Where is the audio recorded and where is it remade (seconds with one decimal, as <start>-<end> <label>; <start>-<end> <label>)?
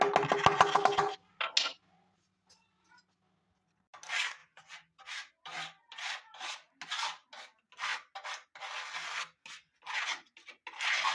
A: 0.0-11.1 recorded